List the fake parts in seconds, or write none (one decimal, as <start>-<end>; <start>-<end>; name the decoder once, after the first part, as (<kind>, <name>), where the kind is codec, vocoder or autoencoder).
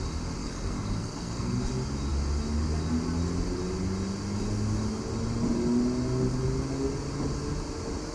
0.4-1.7 (codec, SNAC)